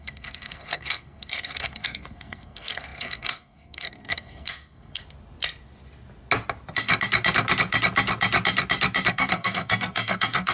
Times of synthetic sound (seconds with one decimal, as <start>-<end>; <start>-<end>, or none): 0.0-5.0; 9.1-10.5